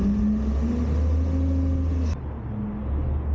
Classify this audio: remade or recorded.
recorded